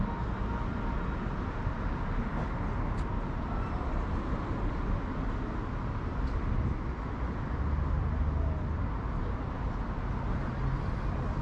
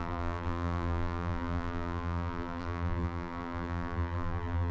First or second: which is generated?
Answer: second